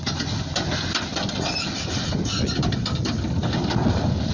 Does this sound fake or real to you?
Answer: real